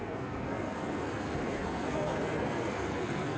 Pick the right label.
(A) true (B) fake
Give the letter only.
B